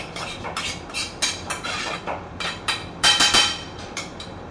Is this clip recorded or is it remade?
remade